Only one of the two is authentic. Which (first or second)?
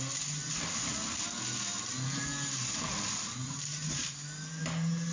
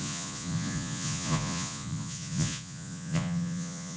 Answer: first